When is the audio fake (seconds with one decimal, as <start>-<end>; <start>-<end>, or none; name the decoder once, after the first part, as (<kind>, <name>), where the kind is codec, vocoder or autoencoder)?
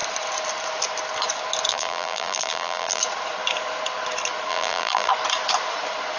1.7-3.0 (vocoder, BigVGAN v2); 4.5-5.1